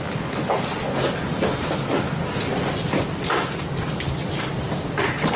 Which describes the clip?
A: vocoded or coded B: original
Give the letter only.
B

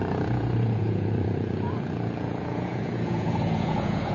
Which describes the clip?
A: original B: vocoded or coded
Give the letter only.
B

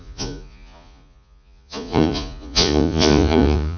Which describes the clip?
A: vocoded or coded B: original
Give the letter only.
A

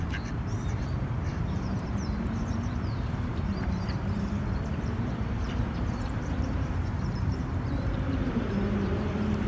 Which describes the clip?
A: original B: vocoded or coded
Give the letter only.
B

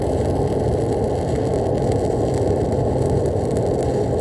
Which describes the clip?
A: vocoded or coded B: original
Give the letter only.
B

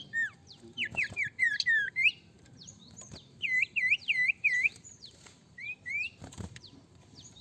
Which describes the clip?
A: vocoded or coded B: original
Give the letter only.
A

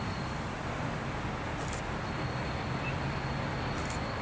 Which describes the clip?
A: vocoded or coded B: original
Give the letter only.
B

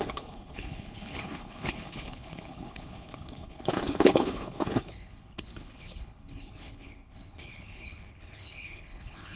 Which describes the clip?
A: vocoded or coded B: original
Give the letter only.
A